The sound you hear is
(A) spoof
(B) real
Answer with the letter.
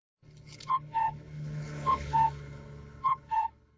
A